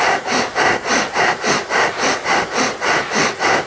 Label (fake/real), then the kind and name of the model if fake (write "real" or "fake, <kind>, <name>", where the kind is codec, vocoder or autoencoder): real